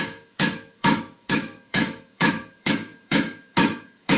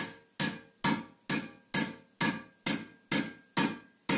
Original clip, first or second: second